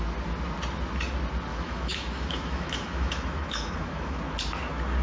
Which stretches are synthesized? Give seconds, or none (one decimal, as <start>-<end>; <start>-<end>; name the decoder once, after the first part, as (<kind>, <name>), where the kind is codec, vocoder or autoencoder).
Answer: 1.5-4.2 (autoencoder, DAC-VAE)